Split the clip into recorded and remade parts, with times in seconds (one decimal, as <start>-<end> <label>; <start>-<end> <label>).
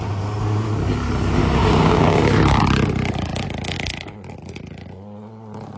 0.0-1.6 recorded; 1.6-2.2 remade; 2.2-5.8 recorded